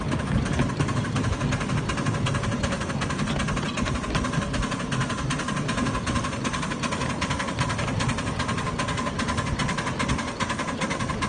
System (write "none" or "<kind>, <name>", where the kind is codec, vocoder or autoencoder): none